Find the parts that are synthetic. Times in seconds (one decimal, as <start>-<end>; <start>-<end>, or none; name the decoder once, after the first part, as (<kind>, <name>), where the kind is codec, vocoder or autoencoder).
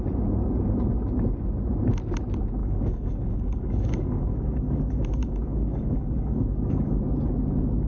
2.6-7.0 (codec, DAC)